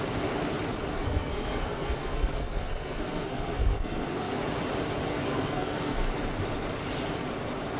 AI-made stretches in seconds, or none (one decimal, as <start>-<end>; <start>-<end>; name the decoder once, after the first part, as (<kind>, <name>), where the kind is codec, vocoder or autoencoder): 0.9-4.4 (codec, SNAC); 5.1-6.1